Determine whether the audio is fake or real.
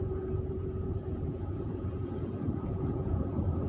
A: fake